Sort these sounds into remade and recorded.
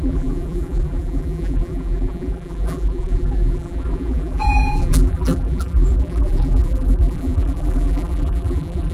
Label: remade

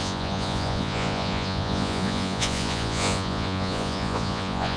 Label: remade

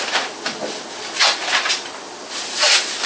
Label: recorded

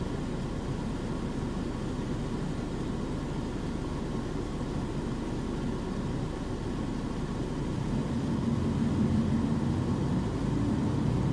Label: recorded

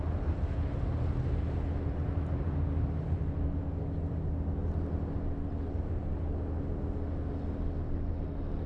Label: recorded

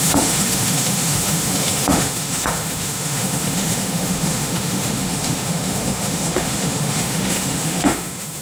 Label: remade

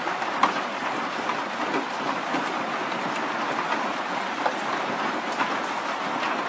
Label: recorded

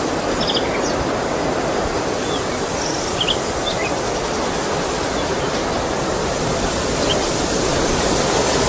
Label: recorded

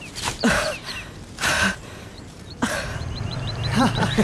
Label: remade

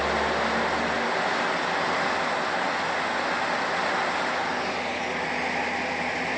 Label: recorded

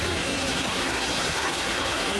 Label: remade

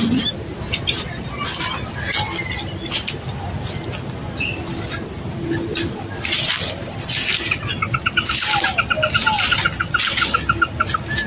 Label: recorded